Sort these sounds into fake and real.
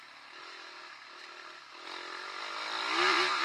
real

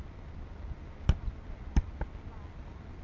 real